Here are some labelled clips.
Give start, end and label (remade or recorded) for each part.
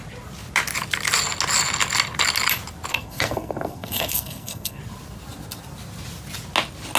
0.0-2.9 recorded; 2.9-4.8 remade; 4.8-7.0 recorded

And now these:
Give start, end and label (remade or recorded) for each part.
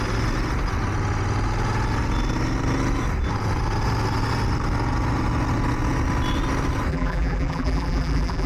0.0-6.9 recorded; 6.9-8.5 remade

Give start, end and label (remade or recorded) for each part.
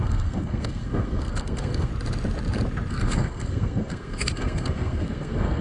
0.0-1.9 remade; 1.9-2.9 recorded; 2.9-5.6 remade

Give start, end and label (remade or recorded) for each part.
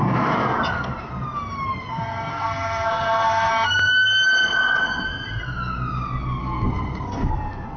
0.0-2.3 recorded; 2.3-3.5 remade; 3.5-6.4 recorded; 6.4-7.3 remade; 7.3-7.8 recorded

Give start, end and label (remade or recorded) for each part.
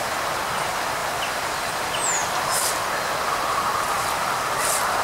0.0-1.0 recorded; 1.0-1.7 remade; 1.7-5.0 recorded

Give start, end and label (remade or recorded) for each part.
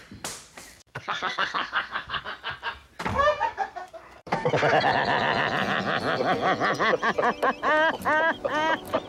0.0-0.7 recorded; 0.7-2.2 remade; 2.2-3.1 recorded; 3.1-4.5 remade; 4.5-9.1 recorded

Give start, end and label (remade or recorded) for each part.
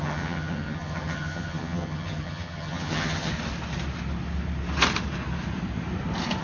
0.0-3.3 remade; 3.3-6.4 recorded